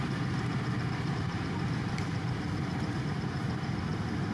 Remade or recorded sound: remade